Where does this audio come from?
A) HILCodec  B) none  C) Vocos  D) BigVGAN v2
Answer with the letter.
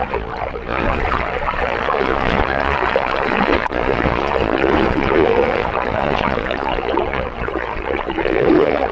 C